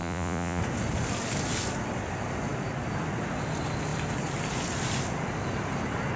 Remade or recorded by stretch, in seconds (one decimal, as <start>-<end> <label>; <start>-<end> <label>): 0.0-0.6 remade; 0.6-6.2 recorded